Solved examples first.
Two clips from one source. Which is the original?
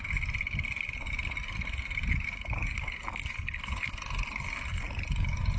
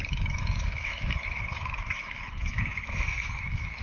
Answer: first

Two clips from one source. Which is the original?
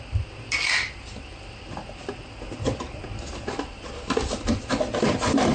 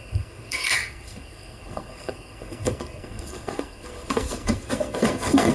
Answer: first